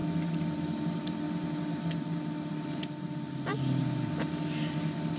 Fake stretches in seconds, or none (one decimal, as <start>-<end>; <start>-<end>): none